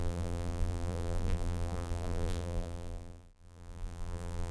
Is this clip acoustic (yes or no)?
no